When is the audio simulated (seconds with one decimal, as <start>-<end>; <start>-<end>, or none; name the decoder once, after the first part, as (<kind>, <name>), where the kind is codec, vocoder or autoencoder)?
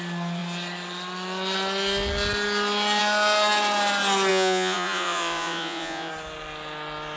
4.3-6.1 (vocoder, Vocos)